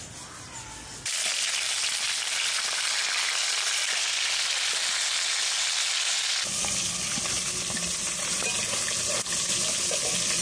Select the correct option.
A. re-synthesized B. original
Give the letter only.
B